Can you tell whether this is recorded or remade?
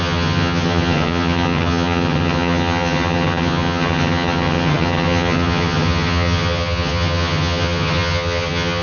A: remade